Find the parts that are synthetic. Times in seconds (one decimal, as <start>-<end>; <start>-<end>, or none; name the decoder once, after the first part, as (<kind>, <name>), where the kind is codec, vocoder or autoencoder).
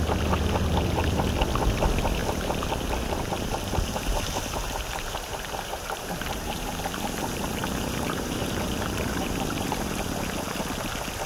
2.2-6.8 (vocoder, BigVGAN v2); 7.6-9.7